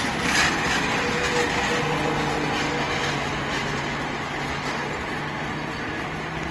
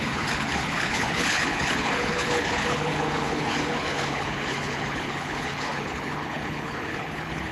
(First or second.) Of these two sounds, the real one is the first